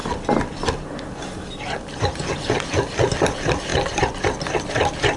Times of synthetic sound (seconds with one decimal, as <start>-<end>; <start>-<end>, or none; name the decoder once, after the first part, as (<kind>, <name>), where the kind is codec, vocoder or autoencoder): none